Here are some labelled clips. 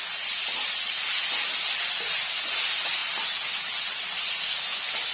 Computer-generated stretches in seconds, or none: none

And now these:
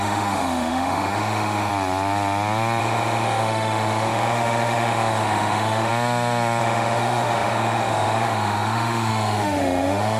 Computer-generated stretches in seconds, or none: 0.0-1.7 (autoencoder, DAC-VAE); 2.8-5.9; 6.6-10.2

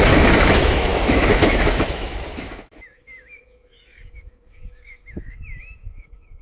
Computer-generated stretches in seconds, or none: 0.0-6.4 (autoencoder, DAC-VAE)

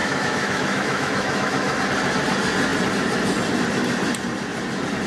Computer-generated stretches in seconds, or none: 0.0-1.8 (autoencoder, DAC-VAE)